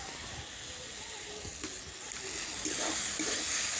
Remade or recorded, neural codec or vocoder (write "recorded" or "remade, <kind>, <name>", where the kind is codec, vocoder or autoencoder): recorded